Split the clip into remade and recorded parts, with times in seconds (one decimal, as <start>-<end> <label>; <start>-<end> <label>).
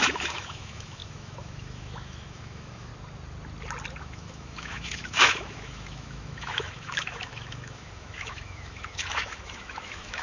0.0-2.9 remade; 2.9-4.0 recorded; 4.0-10.2 remade